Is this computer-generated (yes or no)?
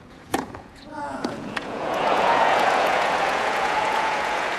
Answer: yes